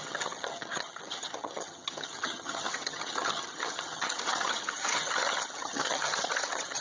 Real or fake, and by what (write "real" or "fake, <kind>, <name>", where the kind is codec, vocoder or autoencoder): fake, vocoder, HiFi-GAN